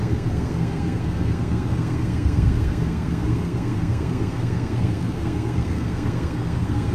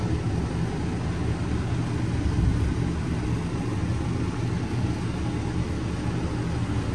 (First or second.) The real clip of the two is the second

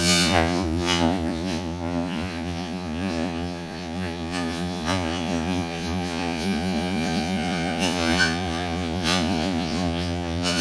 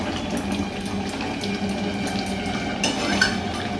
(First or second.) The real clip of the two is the second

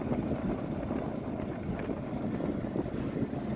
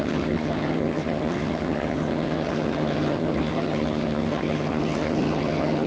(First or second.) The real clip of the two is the first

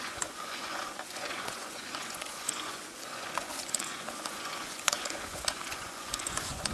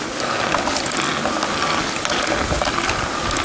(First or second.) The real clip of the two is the second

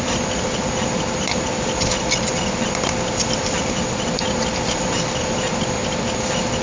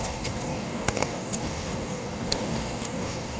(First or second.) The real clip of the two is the first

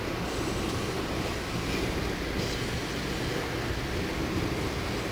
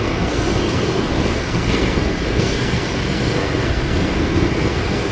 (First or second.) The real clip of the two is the first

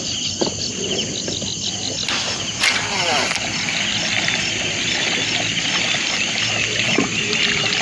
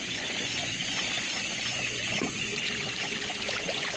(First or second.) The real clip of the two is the first